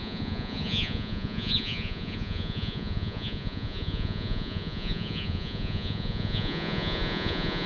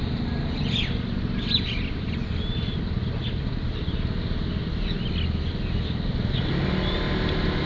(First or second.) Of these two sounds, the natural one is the second